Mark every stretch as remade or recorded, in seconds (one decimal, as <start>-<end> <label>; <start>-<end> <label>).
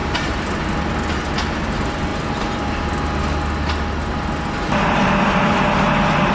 0.0-0.6 remade; 0.6-6.3 recorded